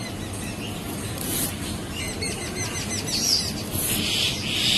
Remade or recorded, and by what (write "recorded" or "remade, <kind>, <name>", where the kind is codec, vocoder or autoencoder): recorded